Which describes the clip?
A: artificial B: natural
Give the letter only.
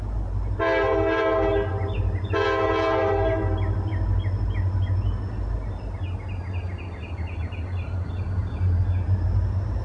B